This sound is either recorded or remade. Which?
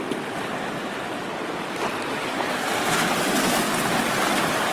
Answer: recorded